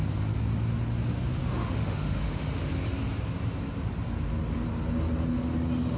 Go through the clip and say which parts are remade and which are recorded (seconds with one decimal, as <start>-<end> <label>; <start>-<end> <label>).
0.0-1.4 recorded; 1.4-2.7 remade; 2.7-6.0 recorded